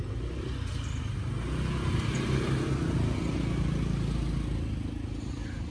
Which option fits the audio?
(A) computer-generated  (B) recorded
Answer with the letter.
B